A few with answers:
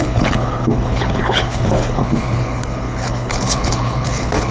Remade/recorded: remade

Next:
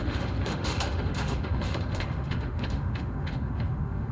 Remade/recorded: remade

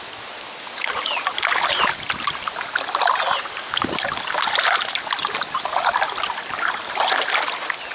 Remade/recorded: recorded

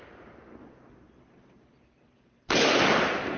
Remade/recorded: recorded